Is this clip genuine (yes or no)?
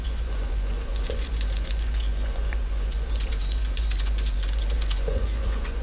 no